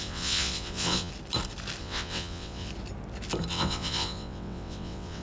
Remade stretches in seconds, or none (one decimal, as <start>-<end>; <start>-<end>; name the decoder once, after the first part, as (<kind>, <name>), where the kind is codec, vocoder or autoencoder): 0.0-1.1 (vocoder, WaveNeXt); 1.8-2.7; 3.5-5.2